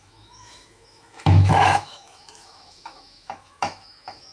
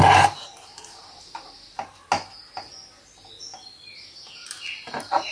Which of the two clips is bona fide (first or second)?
second